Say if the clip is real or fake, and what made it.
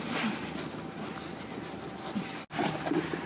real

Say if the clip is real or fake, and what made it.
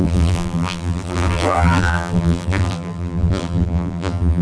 fake, vocoder, BigVGAN v2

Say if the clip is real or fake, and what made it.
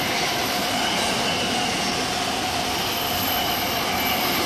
real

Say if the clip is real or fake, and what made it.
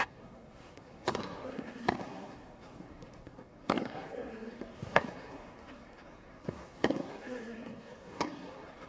fake, codec, SNAC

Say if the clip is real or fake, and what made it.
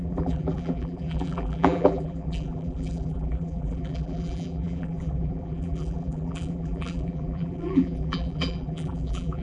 fake, vocoder, BigVGAN v2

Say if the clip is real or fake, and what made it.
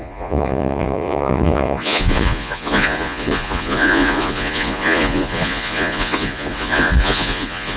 fake, vocoder, Vocos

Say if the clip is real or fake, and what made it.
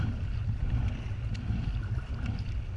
real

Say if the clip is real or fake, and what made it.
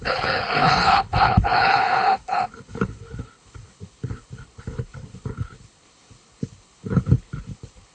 fake, codec, HILCodec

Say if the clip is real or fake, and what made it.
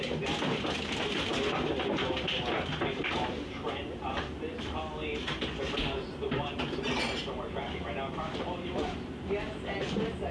real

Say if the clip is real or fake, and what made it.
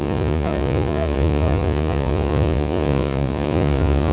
fake, vocoder, Vocos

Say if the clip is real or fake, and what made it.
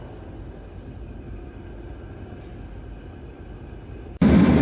real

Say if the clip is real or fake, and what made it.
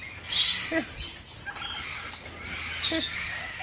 real